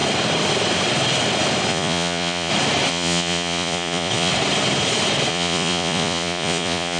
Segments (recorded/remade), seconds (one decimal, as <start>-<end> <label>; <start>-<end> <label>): 0.0-1.7 recorded; 1.7-2.5 remade; 2.5-2.9 recorded; 2.9-4.3 remade; 4.3-5.3 recorded; 5.3-7.0 remade